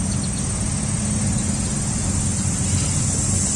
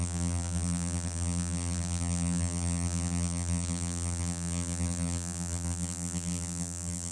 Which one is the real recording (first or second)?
first